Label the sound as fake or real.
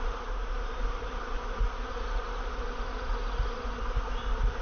real